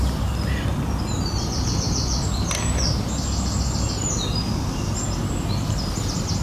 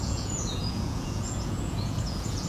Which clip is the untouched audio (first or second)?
first